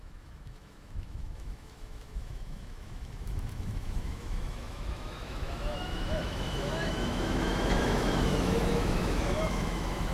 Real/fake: fake